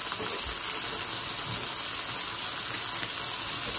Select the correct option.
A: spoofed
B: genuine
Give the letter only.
B